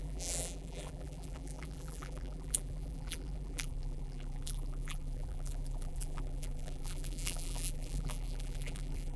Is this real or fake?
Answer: fake